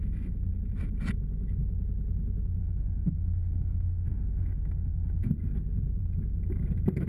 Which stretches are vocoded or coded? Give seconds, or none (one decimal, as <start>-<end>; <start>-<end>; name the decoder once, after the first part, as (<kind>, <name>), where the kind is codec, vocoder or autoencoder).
2.6-5.3 (autoencoder, DAC-VAE)